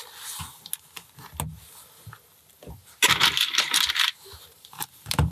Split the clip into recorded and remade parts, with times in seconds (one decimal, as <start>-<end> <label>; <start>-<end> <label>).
0.0-2.8 recorded; 2.8-5.3 remade